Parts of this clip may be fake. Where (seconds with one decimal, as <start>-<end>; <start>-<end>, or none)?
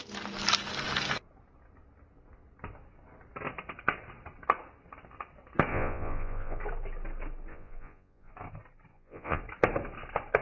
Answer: 5.7-6.6; 7.5-8.3; 8.9-9.4